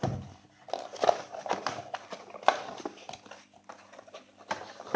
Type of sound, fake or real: real